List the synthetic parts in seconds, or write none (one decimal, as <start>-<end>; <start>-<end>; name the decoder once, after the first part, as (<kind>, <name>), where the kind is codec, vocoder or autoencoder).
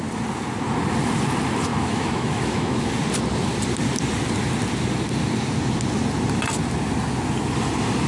1.7-2.9 (autoencoder, DAC-VAE)